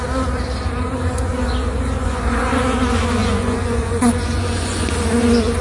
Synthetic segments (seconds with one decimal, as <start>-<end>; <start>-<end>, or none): 2.0-2.6; 3.2-4.9